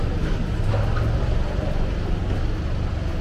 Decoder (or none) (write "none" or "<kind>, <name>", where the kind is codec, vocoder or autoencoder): none